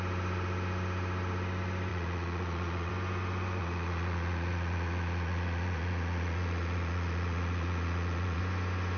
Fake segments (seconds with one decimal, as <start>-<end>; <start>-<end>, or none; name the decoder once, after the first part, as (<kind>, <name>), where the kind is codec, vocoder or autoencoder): 1.9-2.9 (vocoder, Vocos); 3.6-8.4